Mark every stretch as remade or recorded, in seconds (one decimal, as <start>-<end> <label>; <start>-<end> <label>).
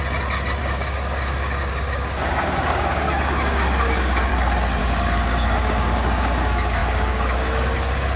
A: 0.0-0.6 recorded; 0.6-4.3 remade; 4.3-4.8 recorded; 4.8-8.2 remade